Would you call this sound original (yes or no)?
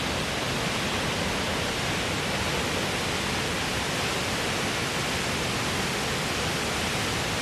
yes